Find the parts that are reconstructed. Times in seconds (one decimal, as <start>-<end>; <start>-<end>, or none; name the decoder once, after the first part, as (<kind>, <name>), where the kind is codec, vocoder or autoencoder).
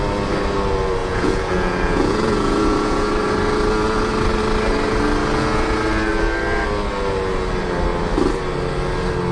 1.0-3.1 (vocoder, Vocos)